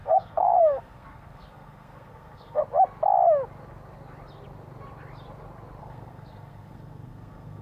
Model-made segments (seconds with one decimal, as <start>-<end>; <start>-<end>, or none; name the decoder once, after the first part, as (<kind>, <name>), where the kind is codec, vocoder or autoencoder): 0.0-2.6 (codec, SNAC); 5.8-7.6